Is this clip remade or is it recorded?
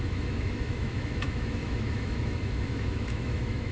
remade